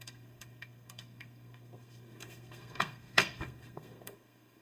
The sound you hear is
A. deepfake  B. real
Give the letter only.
A